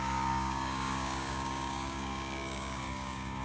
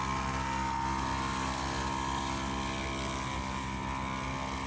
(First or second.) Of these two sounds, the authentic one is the second